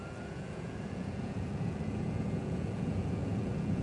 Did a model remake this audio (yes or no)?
yes